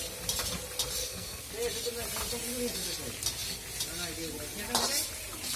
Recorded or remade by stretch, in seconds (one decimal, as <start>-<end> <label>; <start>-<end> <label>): 0.0-1.0 recorded; 1.0-1.5 remade; 1.5-5.6 recorded